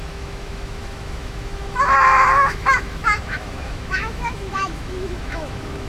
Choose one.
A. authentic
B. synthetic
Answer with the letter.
B